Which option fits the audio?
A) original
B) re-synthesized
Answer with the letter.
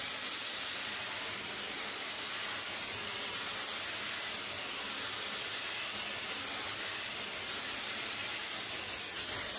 A